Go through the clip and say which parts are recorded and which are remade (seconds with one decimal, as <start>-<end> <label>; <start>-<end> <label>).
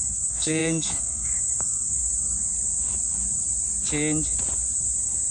0.0-2.1 remade; 2.1-5.3 recorded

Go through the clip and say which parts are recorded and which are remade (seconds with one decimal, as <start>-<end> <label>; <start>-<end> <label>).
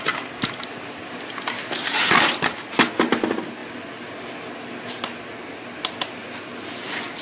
0.0-1.8 recorded; 1.8-2.3 remade; 2.3-7.2 recorded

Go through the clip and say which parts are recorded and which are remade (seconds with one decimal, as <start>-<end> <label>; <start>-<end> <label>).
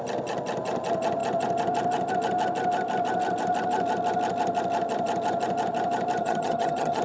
0.0-6.2 recorded; 6.2-7.0 remade